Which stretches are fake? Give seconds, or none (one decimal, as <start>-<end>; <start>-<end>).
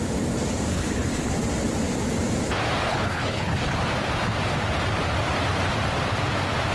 0.7-1.3; 2.9-3.8